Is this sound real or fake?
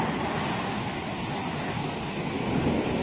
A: real